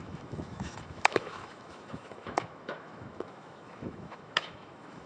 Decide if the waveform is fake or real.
fake